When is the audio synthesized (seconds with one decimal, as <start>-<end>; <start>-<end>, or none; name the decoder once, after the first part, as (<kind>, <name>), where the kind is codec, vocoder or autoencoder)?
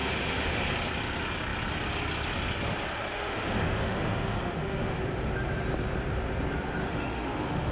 0.0-0.6 (autoencoder, DAC-VAE); 3.1-5.0; 6.8-7.7